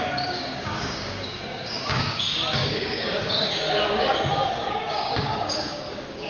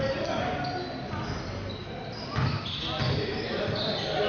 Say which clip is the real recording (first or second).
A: second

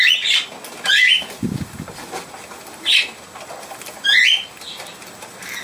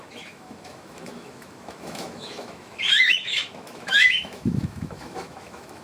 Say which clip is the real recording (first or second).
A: first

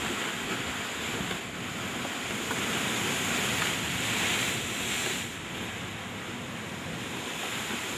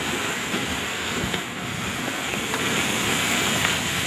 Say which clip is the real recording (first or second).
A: first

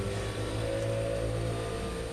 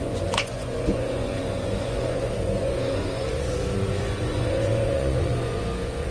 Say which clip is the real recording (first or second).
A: first